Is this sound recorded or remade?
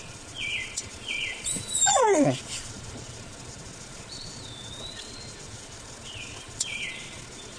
remade